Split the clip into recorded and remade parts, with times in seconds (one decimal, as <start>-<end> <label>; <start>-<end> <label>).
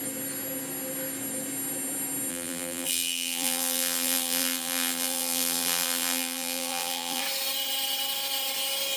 0.0-2.3 recorded; 2.3-7.2 remade; 7.2-9.0 recorded